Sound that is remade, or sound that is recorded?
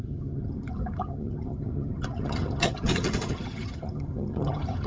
remade